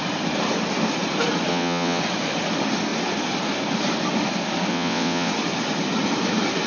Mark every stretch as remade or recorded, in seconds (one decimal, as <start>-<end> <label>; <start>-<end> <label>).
0.0-1.5 recorded; 1.5-2.0 remade; 2.0-4.7 recorded; 4.7-5.3 remade; 5.3-6.7 recorded

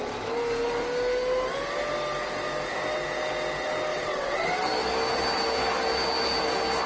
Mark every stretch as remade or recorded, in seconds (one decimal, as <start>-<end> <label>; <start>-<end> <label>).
0.0-3.9 recorded; 3.9-4.5 remade; 4.5-6.9 recorded

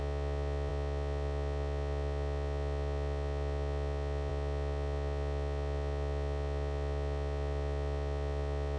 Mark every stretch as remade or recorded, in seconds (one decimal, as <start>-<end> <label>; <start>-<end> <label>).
0.0-8.8 recorded

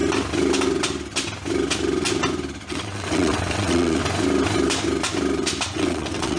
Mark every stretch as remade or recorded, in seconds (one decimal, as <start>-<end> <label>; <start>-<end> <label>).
0.0-2.7 recorded; 2.7-4.0 remade; 4.0-5.7 recorded; 5.7-6.4 remade

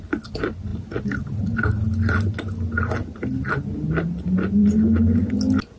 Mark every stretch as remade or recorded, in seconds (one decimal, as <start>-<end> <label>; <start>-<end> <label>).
0.0-5.8 recorded